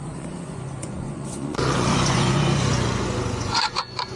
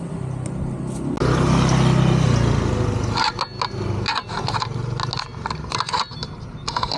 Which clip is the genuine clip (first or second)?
second